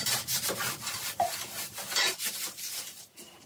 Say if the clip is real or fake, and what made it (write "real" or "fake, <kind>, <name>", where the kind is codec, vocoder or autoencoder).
fake, vocoder, BigVGAN v2